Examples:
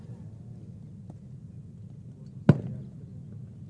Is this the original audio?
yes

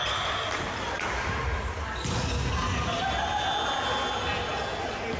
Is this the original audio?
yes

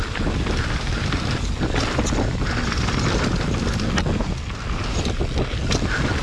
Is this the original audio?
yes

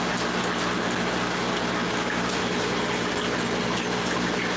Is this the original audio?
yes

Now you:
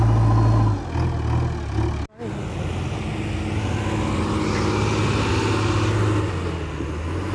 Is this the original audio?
yes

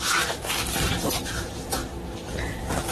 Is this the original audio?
yes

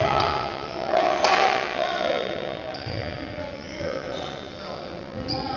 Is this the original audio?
no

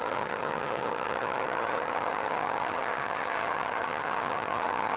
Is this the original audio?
no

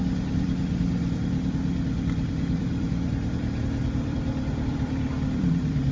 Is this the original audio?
no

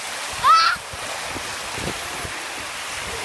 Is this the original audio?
yes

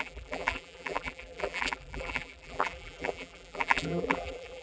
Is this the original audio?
no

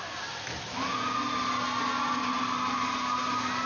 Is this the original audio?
yes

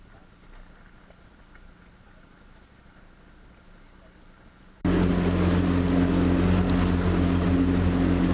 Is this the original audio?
yes